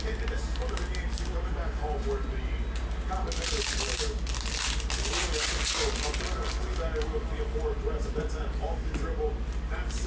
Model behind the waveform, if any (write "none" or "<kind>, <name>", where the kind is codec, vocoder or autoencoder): none